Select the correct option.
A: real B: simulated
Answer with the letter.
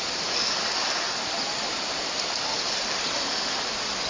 A